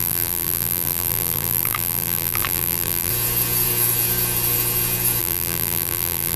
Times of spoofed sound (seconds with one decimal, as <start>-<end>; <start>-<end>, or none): 0.0-3.1; 5.2-6.4